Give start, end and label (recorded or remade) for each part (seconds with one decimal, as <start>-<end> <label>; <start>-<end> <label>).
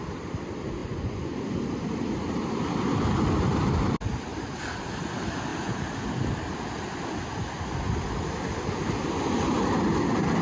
0.0-0.8 recorded; 0.8-1.4 remade; 1.4-10.4 recorded